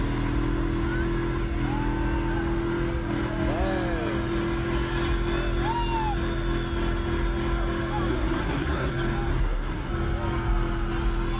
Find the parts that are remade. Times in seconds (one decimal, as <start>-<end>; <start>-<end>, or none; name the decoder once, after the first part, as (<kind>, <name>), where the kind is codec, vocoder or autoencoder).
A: 8.1-8.9 (codec, SNAC); 9.3-9.9